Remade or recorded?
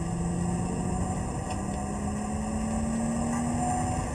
recorded